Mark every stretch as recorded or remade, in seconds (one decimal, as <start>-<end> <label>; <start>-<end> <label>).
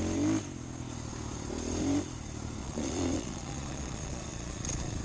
0.0-2.6 recorded; 2.6-5.0 remade